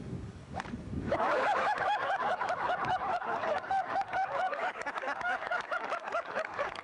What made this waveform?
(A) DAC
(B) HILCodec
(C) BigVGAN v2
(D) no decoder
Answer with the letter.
A